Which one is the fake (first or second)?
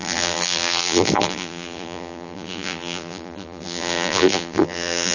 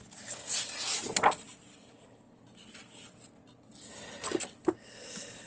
first